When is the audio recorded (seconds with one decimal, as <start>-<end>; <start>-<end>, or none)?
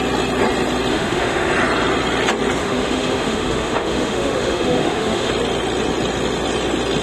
0.0-0.9; 1.5-2.6; 5.3-7.0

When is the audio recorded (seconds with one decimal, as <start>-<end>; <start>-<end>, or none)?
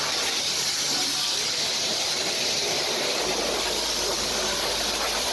0.0-2.6; 3.4-5.3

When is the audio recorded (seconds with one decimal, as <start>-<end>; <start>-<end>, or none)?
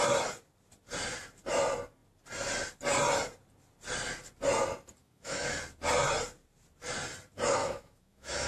0.0-5.0; 5.6-7.6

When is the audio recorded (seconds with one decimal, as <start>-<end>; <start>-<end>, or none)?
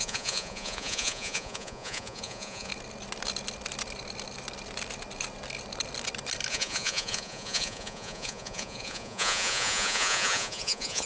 2.7-6.5